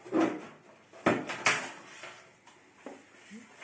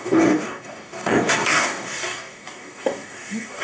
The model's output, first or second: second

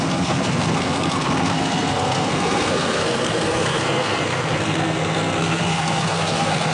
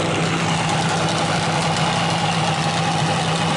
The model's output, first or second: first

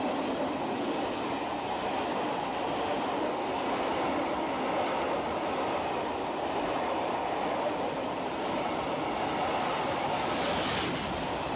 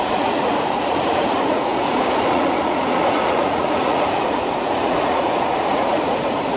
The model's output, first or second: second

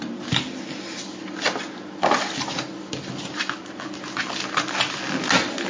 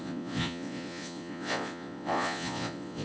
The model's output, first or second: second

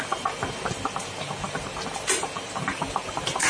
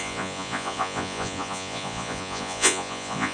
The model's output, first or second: second